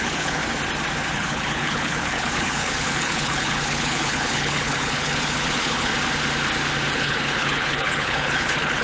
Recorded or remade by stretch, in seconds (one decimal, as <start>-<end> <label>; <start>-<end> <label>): 0.0-0.4 remade; 0.4-1.1 recorded; 1.1-5.9 remade; 5.9-6.9 recorded; 6.9-8.8 remade